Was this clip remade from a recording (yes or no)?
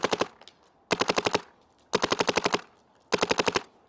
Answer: no